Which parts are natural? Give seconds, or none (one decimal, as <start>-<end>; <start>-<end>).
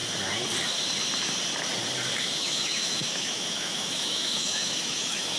0.0-2.2